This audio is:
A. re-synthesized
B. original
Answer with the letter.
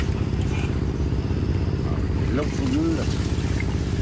B